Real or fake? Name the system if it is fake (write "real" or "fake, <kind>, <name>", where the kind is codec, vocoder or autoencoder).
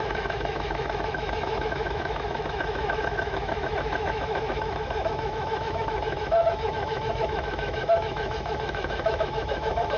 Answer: fake, autoencoder, DAC-VAE